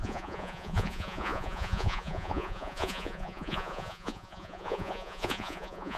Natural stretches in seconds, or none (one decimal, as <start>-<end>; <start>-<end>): none